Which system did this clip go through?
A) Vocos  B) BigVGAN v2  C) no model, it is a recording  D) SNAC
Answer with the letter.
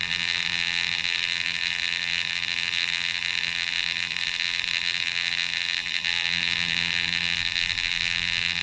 B